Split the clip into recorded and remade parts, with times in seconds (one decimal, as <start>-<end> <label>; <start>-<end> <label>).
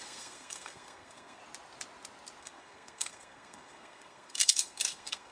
0.0-1.4 remade; 1.4-2.4 recorded; 2.4-5.3 remade